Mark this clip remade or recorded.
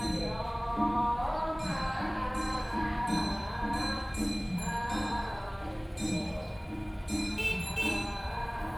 remade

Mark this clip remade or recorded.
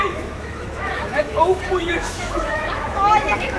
remade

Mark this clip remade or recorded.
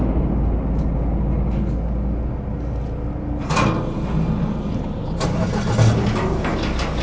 recorded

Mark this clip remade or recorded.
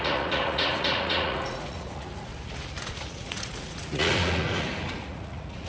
remade